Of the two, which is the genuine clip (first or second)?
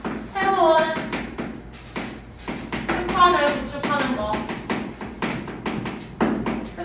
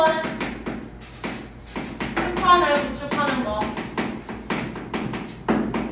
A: second